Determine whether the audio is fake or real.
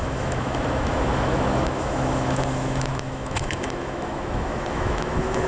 fake